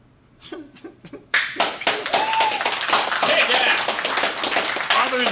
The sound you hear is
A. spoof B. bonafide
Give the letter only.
B